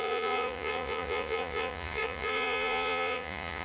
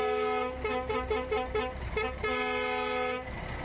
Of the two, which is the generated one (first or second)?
first